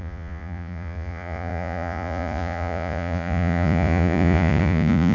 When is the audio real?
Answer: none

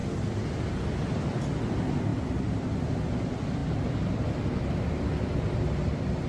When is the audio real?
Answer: 0.0-2.1; 2.8-6.3

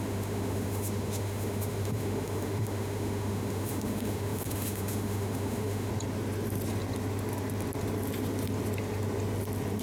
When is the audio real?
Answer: 5.9-9.8

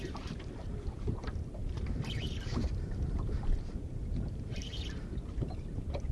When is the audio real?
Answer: none

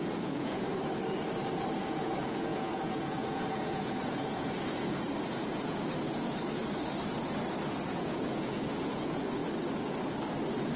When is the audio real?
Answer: 0.7-1.8; 6.6-7.7; 9.4-10.8

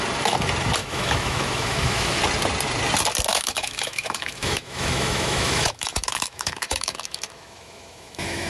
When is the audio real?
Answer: 0.0-0.8; 2.2-3.3